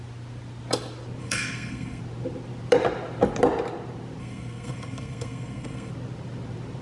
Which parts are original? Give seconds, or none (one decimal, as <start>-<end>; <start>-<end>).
0.0-1.2; 2.0-4.2; 5.9-6.8